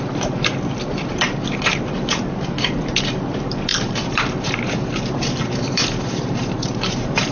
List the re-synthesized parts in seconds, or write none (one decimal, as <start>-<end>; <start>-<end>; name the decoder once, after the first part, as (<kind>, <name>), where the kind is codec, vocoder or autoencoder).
0.0-7.3 (vocoder, BigVGAN v2)